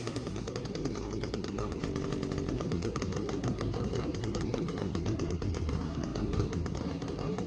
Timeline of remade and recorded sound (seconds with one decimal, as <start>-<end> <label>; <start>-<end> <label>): 0.0-1.8 remade; 1.8-2.5 recorded; 2.5-7.5 remade